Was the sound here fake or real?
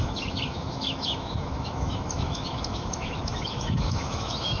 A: fake